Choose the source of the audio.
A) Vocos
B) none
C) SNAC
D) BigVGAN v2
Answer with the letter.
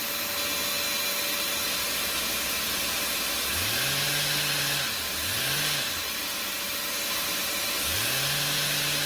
B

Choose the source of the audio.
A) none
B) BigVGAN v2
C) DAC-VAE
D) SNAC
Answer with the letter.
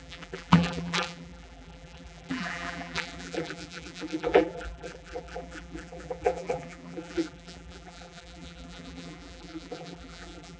B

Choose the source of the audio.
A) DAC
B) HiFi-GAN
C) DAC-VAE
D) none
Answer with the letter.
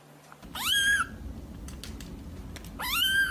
D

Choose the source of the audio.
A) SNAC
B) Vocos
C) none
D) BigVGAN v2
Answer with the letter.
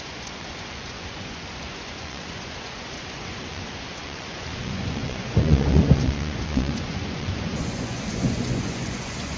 B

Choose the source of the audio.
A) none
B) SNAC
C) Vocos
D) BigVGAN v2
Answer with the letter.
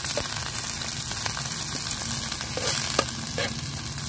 A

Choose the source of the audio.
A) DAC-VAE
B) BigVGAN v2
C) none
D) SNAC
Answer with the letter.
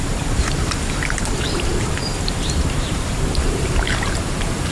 B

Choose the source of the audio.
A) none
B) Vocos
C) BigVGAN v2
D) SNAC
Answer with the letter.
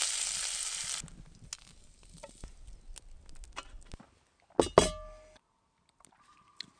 A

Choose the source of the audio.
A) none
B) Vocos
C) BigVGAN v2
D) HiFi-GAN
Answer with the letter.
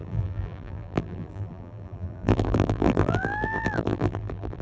C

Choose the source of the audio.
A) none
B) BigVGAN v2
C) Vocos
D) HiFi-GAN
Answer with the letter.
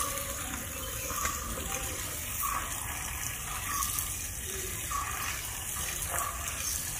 A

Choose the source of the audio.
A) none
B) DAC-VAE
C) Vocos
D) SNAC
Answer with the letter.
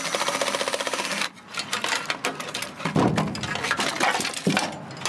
A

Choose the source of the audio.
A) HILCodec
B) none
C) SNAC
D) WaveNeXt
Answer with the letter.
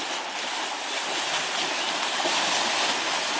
B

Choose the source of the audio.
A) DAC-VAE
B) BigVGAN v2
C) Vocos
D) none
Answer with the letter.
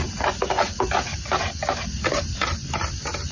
D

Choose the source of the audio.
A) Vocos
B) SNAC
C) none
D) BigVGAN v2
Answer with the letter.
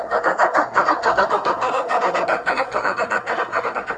B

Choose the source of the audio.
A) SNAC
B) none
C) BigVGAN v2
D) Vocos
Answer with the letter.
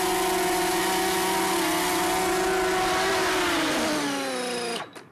B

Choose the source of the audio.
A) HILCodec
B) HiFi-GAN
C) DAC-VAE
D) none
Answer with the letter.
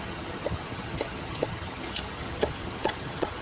B